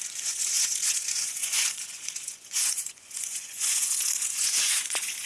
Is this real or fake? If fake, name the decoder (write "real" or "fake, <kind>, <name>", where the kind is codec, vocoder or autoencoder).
fake, vocoder, Vocos